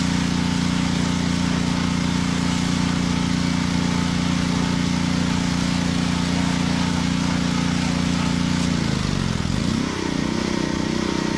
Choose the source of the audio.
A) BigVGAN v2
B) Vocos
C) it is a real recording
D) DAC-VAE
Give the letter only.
C